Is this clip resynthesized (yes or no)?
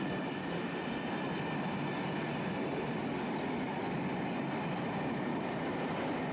no